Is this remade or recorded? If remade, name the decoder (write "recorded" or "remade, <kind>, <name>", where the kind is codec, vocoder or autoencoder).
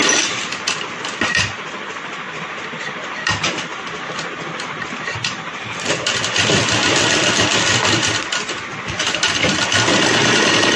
recorded